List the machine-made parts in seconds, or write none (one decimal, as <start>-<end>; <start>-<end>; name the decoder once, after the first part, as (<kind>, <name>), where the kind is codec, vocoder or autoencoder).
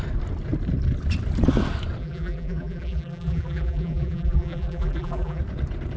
2.0-5.4 (vocoder, BigVGAN v2)